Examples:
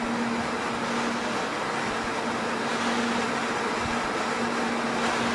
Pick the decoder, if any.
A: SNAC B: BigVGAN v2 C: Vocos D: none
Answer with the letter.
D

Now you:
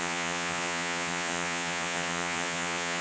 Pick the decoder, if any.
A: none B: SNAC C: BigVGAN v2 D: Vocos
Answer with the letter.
D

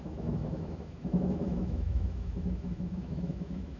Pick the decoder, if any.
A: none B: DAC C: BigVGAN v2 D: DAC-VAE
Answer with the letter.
D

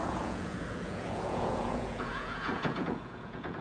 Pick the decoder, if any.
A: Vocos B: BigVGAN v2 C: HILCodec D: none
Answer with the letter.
A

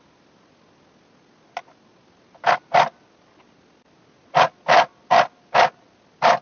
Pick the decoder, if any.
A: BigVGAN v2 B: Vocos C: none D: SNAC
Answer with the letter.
C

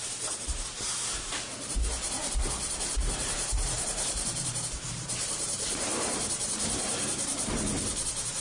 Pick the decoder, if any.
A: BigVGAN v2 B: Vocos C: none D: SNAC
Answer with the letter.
A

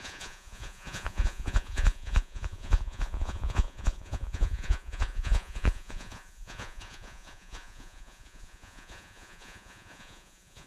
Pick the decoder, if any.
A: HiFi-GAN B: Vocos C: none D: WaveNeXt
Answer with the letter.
B